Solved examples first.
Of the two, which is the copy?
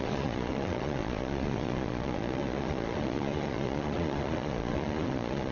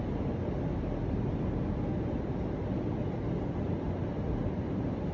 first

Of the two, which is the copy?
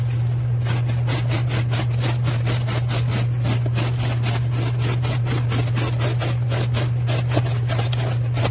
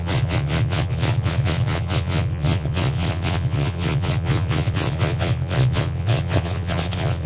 second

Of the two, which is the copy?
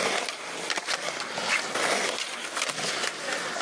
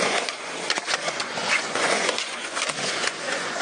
second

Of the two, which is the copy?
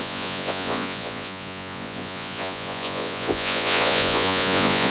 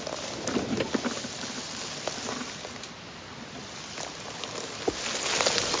first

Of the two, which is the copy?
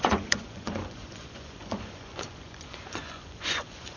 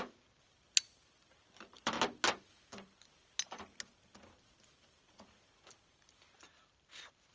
first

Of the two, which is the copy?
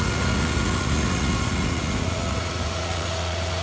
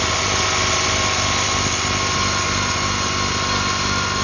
first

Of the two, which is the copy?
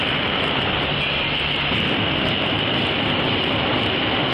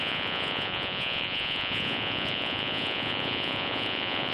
second